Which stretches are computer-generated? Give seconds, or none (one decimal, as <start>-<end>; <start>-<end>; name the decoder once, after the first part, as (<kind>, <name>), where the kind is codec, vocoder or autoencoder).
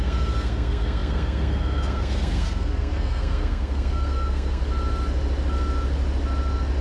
0.0-4.6 (codec, SNAC)